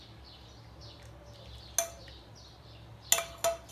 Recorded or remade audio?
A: recorded